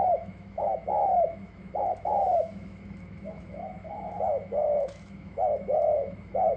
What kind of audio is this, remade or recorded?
remade